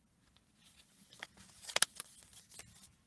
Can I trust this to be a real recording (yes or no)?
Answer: yes